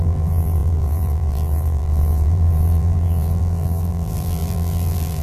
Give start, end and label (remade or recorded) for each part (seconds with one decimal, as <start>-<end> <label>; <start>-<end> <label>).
0.0-5.2 remade

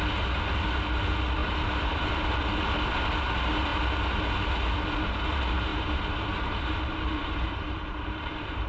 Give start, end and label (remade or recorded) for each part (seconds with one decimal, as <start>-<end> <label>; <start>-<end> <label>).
0.0-1.4 recorded; 1.4-2.1 remade; 2.1-5.7 recorded; 5.7-8.7 remade

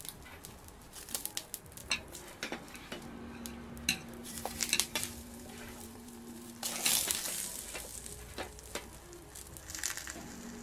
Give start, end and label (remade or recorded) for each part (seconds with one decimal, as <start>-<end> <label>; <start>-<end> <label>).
0.0-1.8 recorded; 1.8-2.5 remade; 2.5-4.2 recorded; 4.2-6.5 remade; 6.5-10.6 recorded

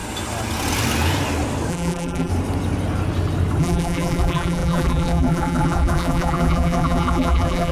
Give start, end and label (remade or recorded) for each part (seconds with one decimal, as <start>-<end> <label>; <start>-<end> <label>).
0.0-1.7 recorded; 1.7-2.3 remade; 2.3-3.6 recorded; 3.6-7.7 remade

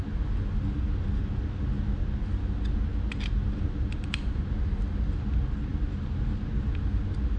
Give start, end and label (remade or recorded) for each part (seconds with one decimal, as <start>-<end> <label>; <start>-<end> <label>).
0.0-2.9 recorded; 2.9-4.4 remade; 4.4-7.4 recorded

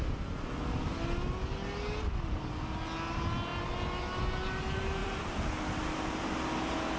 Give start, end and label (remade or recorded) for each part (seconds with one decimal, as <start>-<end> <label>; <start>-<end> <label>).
0.0-5.0 recorded; 5.0-5.5 remade; 5.5-7.0 recorded